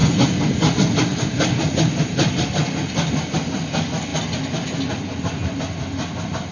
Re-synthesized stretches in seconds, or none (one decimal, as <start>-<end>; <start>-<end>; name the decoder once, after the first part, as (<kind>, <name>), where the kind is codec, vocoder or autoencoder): none

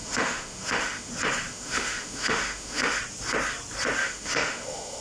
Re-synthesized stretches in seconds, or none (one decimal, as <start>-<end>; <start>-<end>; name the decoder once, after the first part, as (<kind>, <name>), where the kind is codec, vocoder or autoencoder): 0.0-1.1 (autoencoder, DAC-VAE); 1.5-3.0; 4.0-5.0

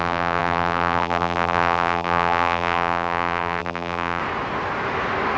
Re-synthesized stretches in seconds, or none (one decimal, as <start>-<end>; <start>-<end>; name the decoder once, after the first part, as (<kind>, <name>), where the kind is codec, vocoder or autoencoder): 0.0-4.2 (vocoder, BigVGAN v2)

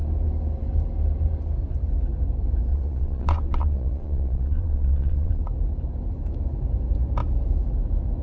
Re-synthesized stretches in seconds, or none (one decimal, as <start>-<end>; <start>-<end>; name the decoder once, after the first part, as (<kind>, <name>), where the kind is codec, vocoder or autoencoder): 2.7-5.4 (vocoder, Vocos)

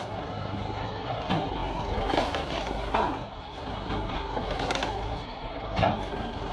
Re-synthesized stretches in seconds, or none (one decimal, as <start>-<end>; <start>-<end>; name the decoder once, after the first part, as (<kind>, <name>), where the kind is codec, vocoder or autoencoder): 0.0-6.5 (codec, SNAC)

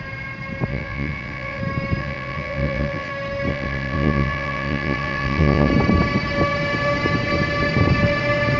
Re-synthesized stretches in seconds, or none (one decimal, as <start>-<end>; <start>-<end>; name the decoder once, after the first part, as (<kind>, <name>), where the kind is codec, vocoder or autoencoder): 0.7-1.6 (vocoder, WaveNeXt); 2.0-3.1; 3.5-5.7

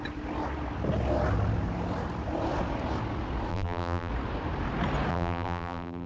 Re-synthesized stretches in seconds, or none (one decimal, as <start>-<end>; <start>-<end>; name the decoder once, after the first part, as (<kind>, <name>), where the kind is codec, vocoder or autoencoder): 3.5-4.1 (vocoder, BigVGAN v2); 5.1-6.1